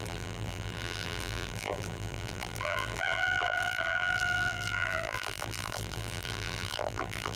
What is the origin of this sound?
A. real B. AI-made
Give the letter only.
B